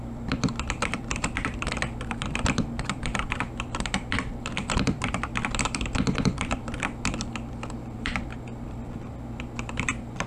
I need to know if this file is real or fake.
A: fake